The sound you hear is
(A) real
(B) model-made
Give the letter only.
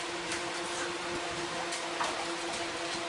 A